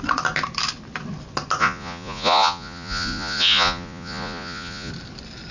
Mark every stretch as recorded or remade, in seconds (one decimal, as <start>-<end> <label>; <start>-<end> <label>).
0.0-1.6 recorded; 1.6-4.9 remade; 4.9-5.5 recorded